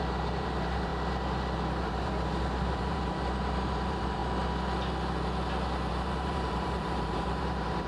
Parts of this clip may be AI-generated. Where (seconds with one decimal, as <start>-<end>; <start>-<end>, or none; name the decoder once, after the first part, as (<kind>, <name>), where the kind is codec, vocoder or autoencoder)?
0.0-0.9 (vocoder, BigVGAN v2); 1.8-4.2; 5.9-7.9